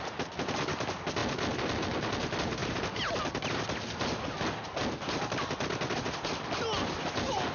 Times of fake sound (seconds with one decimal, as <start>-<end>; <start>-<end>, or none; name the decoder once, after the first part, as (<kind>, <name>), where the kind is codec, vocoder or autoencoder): none